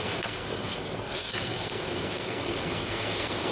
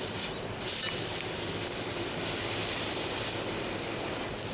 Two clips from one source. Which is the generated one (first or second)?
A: first